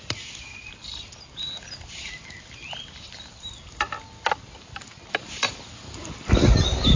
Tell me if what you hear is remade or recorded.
recorded